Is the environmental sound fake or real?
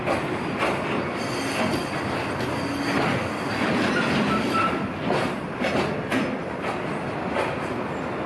real